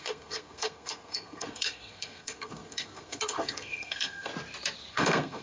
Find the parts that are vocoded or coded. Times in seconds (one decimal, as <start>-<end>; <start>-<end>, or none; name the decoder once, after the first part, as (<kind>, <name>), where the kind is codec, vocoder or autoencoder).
0.0-4.3 (codec, SNAC); 4.9-5.4